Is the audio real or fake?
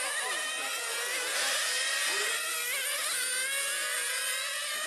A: real